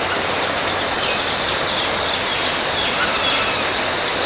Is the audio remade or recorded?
recorded